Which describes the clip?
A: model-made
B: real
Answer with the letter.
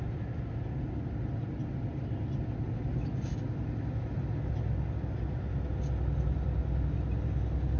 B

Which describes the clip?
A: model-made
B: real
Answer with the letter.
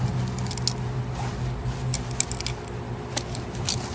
B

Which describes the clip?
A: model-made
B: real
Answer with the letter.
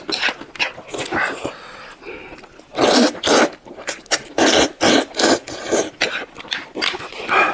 B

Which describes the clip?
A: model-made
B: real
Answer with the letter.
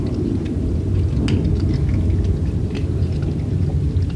B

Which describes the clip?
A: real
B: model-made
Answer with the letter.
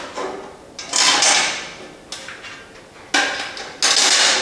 A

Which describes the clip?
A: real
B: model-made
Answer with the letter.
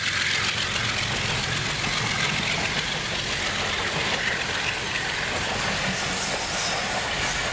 A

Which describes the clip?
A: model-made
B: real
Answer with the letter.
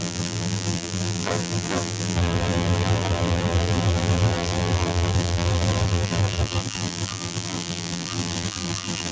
A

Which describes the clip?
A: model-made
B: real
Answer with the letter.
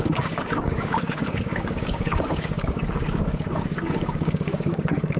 A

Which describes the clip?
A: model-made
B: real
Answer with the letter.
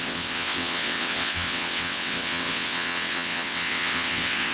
A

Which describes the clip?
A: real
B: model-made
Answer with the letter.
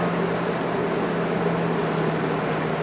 A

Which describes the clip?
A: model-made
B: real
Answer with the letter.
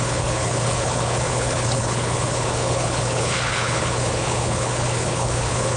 A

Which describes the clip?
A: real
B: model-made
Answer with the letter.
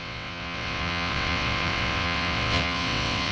B